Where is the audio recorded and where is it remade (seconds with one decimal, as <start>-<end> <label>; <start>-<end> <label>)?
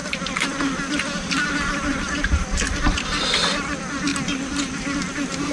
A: 0.0-5.5 recorded